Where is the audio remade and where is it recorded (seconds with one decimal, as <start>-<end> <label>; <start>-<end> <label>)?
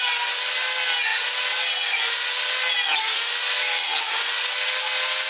0.0-5.3 recorded